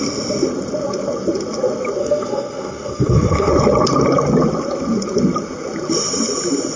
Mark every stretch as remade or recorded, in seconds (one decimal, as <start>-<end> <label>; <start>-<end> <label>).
0.0-2.0 recorded; 2.0-3.5 remade; 3.5-6.8 recorded